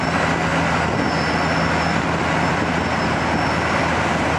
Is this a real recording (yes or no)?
yes